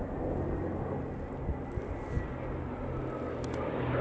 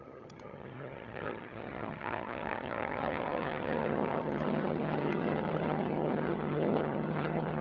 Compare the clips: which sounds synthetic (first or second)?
second